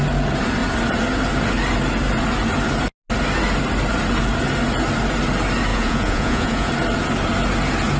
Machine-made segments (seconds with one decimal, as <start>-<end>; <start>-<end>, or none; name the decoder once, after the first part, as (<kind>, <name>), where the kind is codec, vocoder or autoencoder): 5.7-6.7 (vocoder, Vocos)